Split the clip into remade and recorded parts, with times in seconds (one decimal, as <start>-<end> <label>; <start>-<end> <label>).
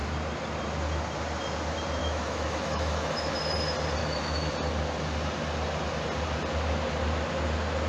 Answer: 0.0-2.0 recorded; 2.0-3.3 remade; 3.3-4.0 recorded; 4.0-4.5 remade; 4.5-7.9 recorded